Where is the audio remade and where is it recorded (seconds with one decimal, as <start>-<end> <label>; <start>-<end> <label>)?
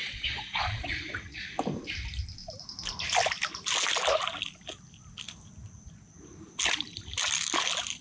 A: 0.0-1.5 remade; 1.5-8.0 recorded